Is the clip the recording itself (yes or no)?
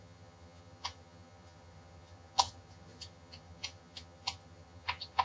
no